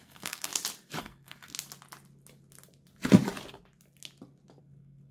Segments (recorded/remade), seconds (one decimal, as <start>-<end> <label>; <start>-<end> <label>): 0.0-0.5 remade; 0.5-1.0 recorded; 1.0-1.5 remade; 1.5-4.6 recorded; 4.6-5.1 remade